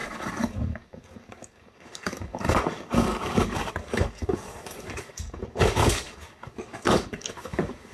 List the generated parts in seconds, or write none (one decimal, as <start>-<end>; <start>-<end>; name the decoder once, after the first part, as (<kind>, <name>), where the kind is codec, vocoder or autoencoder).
0.0-7.9 (codec, DAC)